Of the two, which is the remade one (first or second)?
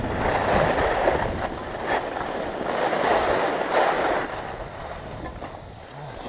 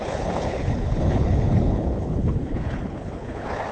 second